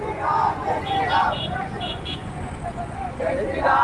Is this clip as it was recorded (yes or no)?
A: no